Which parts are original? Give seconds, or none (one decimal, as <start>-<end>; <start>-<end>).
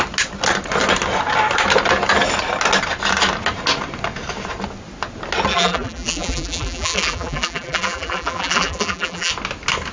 0.0-5.5; 9.3-9.9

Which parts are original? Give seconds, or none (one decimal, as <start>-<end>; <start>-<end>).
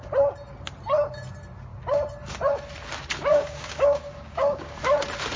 0.0-3.3; 4.8-5.4